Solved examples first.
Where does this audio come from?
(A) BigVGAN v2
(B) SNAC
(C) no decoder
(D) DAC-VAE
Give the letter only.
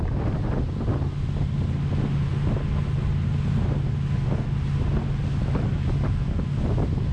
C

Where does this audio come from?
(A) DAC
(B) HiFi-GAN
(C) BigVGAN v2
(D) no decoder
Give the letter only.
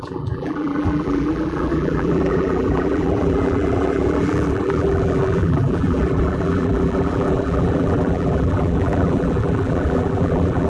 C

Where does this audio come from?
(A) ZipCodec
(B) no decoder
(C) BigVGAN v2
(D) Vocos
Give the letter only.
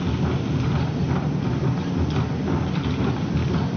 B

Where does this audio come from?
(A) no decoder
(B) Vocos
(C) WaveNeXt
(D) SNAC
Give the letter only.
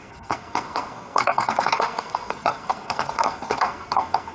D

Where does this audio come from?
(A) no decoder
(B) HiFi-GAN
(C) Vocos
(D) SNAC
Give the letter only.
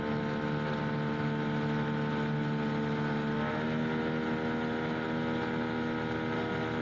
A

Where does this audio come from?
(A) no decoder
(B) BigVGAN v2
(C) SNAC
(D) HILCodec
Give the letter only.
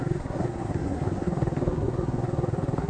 C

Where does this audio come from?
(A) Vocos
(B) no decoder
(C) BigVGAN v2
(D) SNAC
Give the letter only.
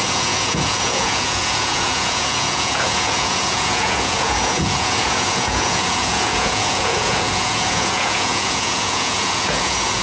A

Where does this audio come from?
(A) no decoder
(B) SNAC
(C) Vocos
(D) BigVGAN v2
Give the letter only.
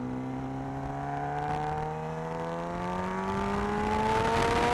A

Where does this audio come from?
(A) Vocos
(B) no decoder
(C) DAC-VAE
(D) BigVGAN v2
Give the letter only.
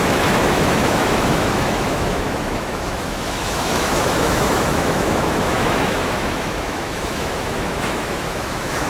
C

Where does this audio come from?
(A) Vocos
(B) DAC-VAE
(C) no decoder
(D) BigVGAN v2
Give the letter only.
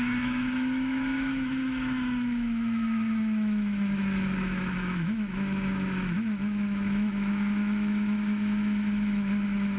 B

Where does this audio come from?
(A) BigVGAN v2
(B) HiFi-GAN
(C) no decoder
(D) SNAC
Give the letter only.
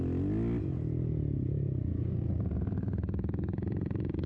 C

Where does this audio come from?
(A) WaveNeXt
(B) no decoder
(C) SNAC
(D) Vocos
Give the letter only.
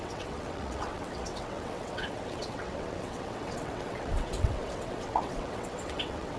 A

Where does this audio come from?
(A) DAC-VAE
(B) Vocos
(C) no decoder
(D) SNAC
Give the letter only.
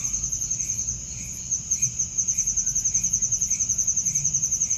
C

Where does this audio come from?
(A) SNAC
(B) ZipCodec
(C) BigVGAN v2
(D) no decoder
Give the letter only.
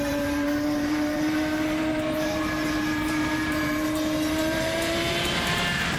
C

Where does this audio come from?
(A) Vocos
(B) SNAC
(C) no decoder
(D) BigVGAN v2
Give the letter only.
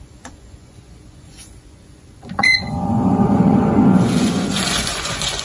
A